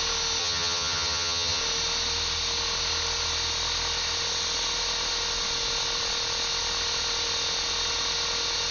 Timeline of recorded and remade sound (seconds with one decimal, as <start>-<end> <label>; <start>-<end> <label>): 0.0-0.4 recorded; 0.4-1.6 remade; 1.6-8.7 recorded